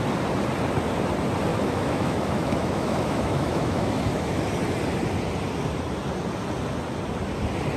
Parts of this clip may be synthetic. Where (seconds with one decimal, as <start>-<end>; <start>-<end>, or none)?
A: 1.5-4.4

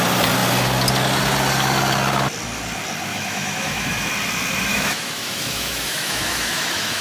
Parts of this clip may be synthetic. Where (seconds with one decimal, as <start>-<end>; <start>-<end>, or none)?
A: 3.1-4.1; 4.7-7.0

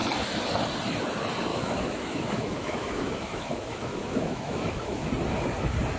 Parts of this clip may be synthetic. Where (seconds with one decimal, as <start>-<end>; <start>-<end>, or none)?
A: 1.5-5.1

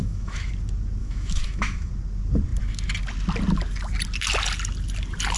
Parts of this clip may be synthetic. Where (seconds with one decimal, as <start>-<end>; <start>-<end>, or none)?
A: 0.0-0.5; 1.0-1.9

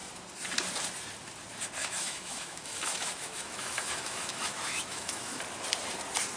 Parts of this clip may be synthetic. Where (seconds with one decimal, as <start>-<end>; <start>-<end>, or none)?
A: 1.8-5.4